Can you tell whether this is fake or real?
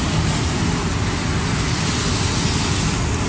real